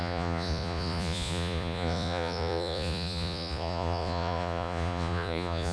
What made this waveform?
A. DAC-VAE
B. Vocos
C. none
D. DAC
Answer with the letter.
B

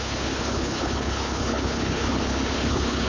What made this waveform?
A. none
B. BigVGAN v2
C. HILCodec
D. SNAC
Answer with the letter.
C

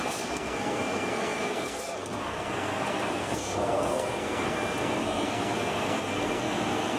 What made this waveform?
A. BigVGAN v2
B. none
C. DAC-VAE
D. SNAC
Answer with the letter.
D